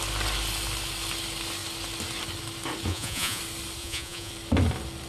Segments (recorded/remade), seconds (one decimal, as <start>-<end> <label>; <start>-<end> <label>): 0.0-2.9 recorded; 2.9-3.4 remade; 3.4-3.8 recorded; 3.8-4.3 remade; 4.3-5.1 recorded